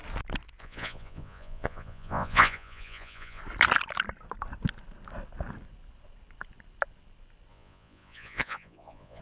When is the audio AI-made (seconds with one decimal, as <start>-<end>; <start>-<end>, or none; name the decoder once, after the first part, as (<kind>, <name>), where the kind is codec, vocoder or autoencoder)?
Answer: 0.6-3.4 (vocoder, Vocos); 7.5-9.2